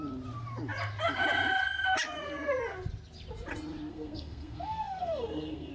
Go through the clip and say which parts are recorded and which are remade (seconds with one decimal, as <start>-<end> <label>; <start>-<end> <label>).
0.0-3.9 recorded; 3.9-5.7 remade